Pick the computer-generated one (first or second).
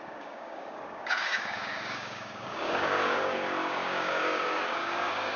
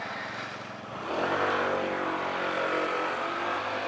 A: first